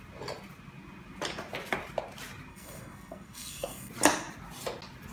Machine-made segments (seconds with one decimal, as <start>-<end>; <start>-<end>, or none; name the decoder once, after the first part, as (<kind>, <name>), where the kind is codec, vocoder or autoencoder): 2.5-3.9 (codec, SNAC)